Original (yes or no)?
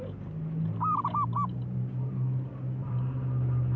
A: yes